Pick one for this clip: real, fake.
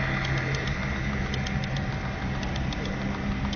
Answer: real